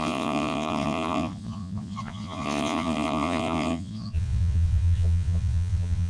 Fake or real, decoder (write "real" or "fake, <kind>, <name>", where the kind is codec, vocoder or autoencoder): fake, vocoder, Vocos